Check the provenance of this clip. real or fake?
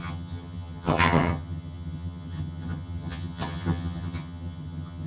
fake